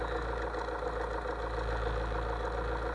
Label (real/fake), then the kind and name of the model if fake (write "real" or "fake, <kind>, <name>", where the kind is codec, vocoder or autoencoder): real